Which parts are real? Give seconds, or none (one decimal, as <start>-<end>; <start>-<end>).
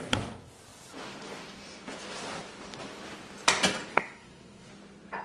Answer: 0.0-3.9; 4.7-5.2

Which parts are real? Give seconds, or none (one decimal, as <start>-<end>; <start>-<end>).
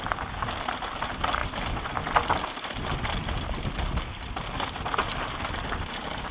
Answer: 0.0-6.3